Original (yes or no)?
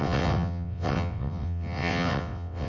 no